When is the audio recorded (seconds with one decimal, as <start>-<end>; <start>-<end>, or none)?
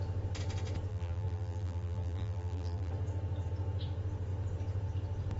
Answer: 0.0-0.9; 2.9-5.4